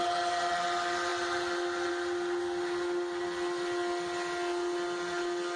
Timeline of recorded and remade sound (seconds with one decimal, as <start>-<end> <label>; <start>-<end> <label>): 0.0-5.6 recorded